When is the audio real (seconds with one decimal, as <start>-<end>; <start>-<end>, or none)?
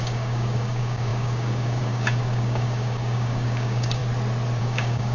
4.0-4.6